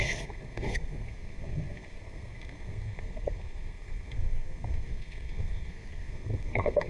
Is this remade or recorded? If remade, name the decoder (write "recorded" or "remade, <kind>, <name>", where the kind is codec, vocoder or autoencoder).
remade, codec, SNAC